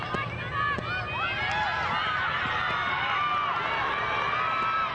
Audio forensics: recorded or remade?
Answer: recorded